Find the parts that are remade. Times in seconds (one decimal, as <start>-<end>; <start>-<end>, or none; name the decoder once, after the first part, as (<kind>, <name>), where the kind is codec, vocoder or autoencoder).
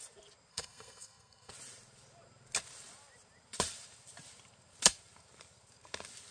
0.5-1.5 (codec, SNAC)